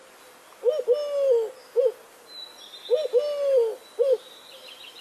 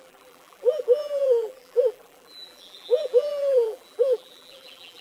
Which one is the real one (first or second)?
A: first